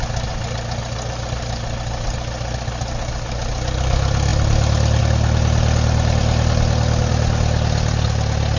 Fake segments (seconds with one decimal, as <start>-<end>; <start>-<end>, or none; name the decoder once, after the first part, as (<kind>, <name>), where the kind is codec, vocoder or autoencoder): none